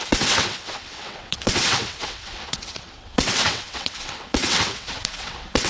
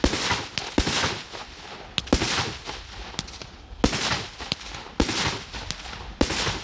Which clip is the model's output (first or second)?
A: first